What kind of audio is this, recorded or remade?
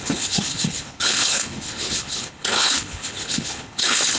remade